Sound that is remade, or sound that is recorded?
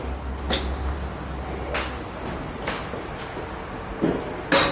recorded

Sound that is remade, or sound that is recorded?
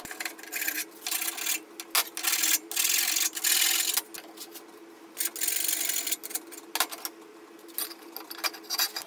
recorded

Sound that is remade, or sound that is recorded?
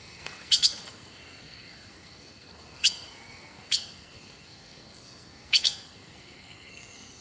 remade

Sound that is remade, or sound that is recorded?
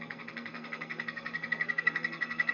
remade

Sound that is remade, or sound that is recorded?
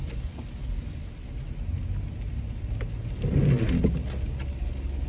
recorded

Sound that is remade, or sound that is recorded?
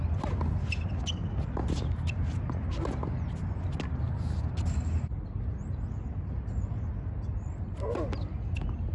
recorded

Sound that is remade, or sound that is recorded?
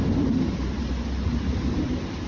recorded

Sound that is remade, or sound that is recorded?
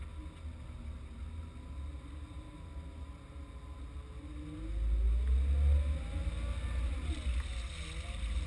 recorded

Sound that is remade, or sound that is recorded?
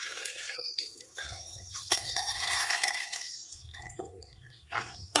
remade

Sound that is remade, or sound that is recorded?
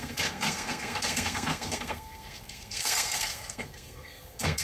remade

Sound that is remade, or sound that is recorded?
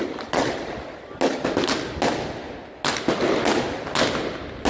recorded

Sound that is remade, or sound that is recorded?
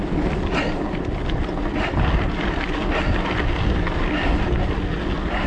recorded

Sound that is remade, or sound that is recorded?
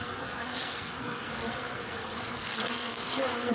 remade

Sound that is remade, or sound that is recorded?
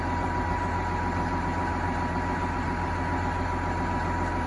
recorded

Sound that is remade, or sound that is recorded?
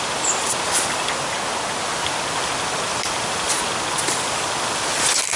recorded